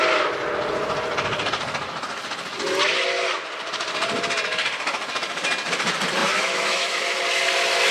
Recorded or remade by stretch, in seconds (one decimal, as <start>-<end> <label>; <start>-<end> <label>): 0.0-6.2 recorded; 6.2-7.2 remade; 7.2-7.9 recorded